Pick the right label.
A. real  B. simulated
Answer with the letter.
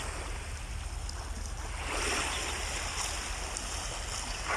A